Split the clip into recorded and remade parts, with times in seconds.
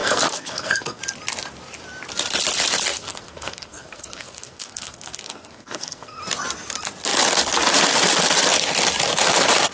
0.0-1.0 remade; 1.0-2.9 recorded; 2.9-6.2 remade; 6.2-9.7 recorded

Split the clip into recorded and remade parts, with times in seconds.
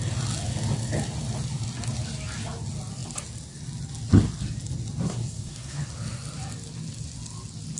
0.0-5.0 recorded; 5.0-5.8 remade; 5.8-7.8 recorded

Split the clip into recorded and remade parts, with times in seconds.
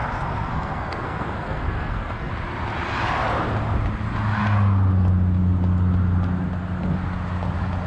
0.0-2.3 remade; 2.3-7.9 recorded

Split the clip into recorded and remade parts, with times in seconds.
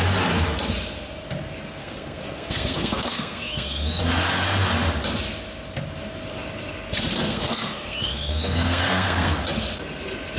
0.0-1.8 recorded; 1.8-4.0 remade; 4.0-7.2 recorded; 7.2-9.4 remade; 9.4-10.4 recorded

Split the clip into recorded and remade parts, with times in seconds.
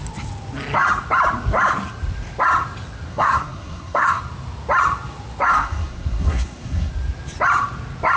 0.0-3.1 recorded; 3.1-4.2 remade; 4.2-5.5 recorded; 5.5-6.9 remade; 6.9-8.2 recorded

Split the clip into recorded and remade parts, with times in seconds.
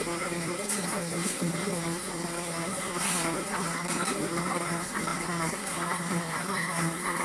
0.0-7.2 remade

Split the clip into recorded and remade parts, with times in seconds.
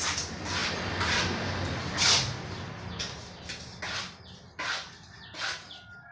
0.0-6.1 recorded